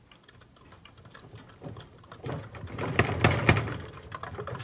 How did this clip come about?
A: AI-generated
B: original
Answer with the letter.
B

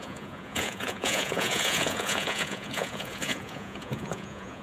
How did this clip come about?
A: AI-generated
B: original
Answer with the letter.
A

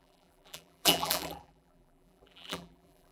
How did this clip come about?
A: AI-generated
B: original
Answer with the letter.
A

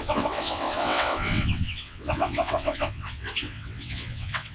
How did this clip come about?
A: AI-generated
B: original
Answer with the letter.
A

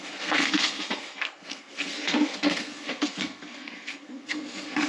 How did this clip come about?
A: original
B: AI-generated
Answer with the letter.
B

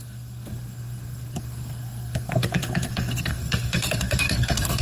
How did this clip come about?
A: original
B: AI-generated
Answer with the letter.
B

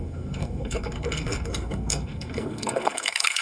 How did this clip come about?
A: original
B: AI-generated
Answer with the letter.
B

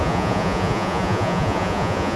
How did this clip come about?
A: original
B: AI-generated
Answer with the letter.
B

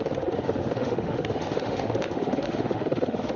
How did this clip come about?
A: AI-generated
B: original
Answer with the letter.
A